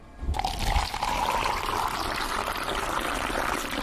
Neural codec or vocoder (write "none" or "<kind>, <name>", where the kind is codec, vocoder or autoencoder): none